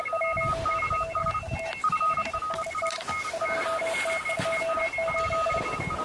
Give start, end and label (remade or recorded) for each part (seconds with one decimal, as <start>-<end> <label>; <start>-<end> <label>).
0.0-6.0 recorded